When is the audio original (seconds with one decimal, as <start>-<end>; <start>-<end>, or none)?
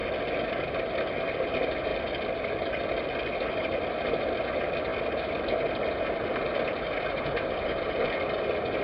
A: 0.0-8.8